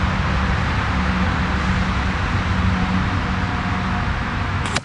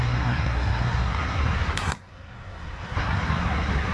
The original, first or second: first